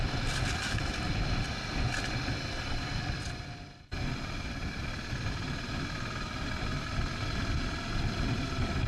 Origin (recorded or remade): recorded